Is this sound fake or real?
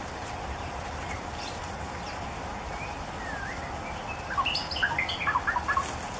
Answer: real